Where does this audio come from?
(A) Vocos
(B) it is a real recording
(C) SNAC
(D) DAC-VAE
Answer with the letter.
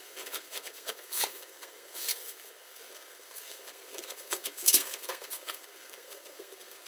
C